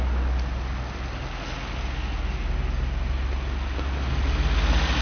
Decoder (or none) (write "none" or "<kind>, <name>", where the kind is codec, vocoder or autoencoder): none